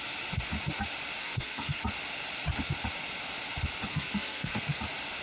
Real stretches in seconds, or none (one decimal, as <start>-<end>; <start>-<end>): 0.0-1.2; 1.8-3.9; 4.8-5.2